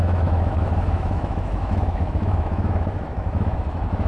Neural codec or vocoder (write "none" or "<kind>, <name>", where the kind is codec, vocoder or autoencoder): autoencoder, DAC-VAE